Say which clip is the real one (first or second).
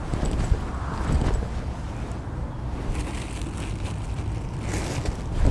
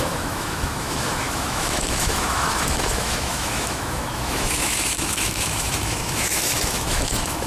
first